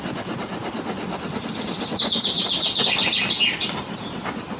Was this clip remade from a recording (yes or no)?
no